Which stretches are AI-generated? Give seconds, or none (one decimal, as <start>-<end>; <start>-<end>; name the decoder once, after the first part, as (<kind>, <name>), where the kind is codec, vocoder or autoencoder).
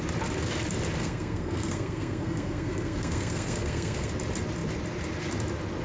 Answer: 1.0-4.1 (codec, SNAC)